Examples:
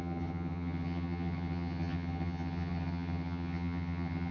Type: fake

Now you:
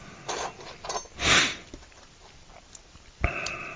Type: real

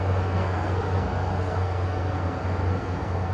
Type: fake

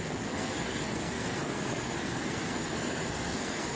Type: fake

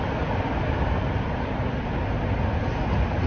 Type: real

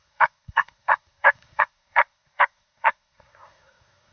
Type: fake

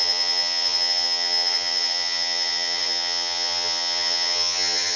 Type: fake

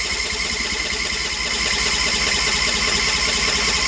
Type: real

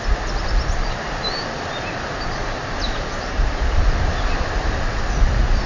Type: real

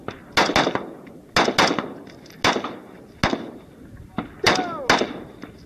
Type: real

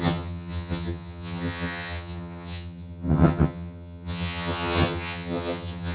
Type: fake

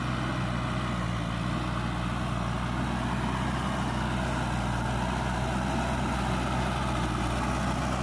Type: real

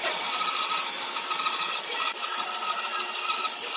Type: real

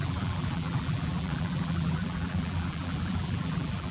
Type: fake